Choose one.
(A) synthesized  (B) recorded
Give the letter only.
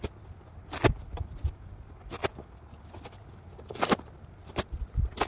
B